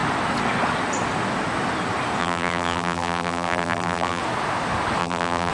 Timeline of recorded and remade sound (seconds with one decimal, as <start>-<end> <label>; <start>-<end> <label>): 0.0-2.2 recorded; 2.2-4.2 remade; 4.2-5.0 recorded; 5.0-5.5 remade